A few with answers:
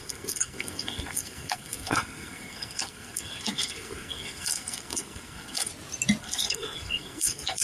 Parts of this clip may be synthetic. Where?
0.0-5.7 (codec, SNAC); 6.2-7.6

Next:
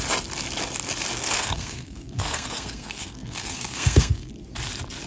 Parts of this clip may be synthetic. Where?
1.2-4.3 (codec, SNAC)

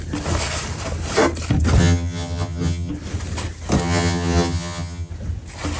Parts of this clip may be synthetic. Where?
1.8-2.9 (vocoder, HiFi-GAN); 3.8-5.1

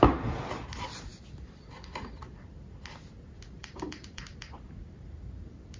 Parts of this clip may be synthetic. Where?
3.6-4.2 (vocoder, BigVGAN v2)

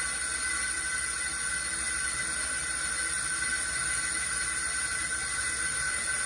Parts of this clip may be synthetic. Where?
none